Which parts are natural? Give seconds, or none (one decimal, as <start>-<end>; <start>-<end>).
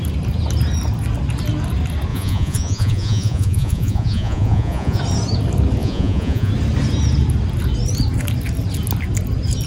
0.0-2.1; 5.0-5.8; 6.5-9.7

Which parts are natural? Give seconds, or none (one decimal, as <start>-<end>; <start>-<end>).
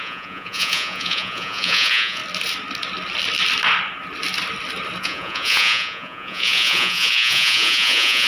2.2-5.0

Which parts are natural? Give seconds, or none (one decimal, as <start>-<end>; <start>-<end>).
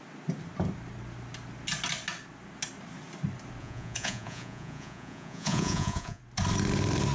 0.0-3.6; 6.2-7.1